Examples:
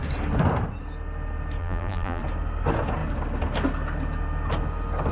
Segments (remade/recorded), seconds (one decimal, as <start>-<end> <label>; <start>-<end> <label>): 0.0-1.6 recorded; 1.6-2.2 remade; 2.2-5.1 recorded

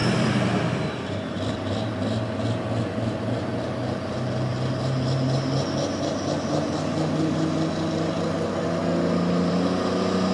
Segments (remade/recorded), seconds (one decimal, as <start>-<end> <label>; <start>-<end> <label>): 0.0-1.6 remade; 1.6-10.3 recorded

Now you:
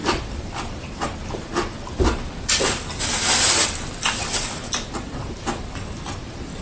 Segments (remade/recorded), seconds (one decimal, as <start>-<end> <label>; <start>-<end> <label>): 0.0-2.5 remade; 2.5-6.6 recorded

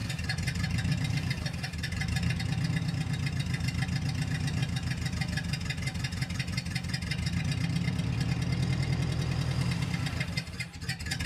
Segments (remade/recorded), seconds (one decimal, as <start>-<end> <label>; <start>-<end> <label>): 0.0-2.4 remade; 2.4-11.3 recorded

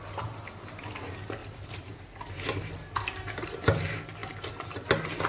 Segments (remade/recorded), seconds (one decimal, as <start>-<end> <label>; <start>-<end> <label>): 0.0-1.4 recorded; 1.4-1.9 remade; 1.9-5.3 recorded